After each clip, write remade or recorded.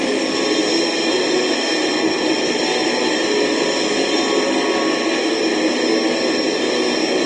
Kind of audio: recorded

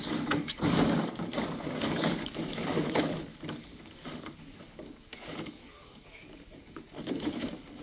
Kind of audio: remade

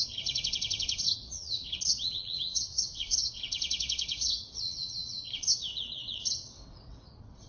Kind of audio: remade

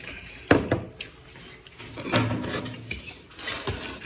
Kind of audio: recorded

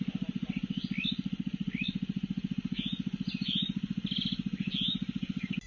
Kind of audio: recorded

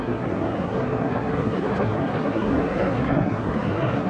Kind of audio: remade